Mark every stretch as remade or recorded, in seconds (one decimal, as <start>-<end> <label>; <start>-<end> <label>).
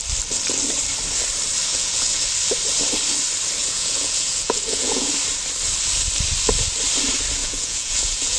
0.0-1.7 recorded; 1.7-2.2 remade; 2.2-3.6 recorded; 3.6-5.1 remade; 5.1-7.4 recorded; 7.4-8.4 remade